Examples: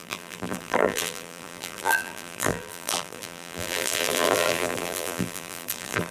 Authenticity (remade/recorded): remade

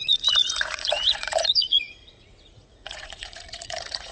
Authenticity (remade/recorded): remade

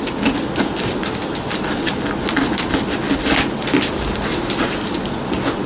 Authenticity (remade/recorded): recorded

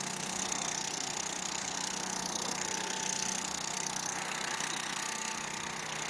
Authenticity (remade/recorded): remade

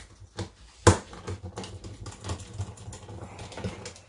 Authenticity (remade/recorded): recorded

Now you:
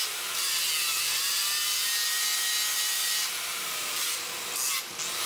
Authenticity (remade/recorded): recorded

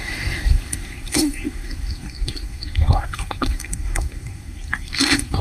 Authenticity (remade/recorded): remade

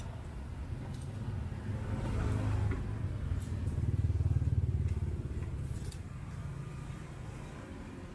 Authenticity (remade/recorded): recorded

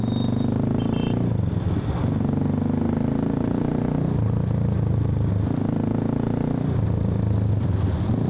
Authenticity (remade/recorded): recorded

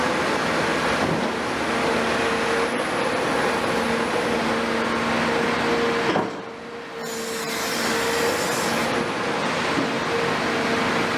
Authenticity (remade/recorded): recorded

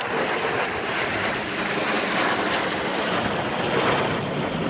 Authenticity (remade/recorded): recorded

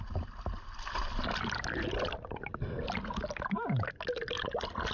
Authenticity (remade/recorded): recorded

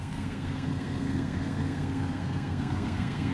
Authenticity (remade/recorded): remade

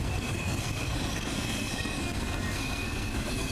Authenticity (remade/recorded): remade